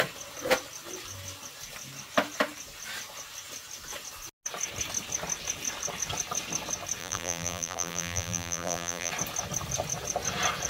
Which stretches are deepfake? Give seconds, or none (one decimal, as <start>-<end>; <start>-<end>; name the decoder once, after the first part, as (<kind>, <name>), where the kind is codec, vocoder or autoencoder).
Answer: 7.0-9.1 (vocoder, BigVGAN v2)